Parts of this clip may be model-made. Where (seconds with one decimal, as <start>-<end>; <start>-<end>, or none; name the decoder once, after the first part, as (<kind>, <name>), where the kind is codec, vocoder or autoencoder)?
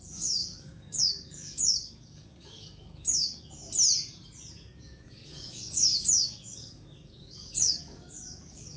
0.0-3.6 (codec, DAC); 4.5-8.8